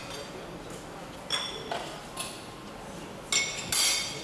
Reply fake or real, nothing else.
real